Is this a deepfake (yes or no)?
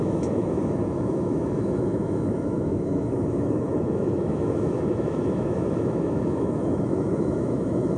yes